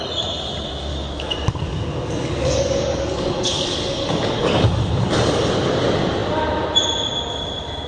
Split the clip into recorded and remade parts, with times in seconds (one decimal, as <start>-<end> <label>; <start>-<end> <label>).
0.0-0.9 recorded; 0.9-5.5 remade; 5.5-7.9 recorded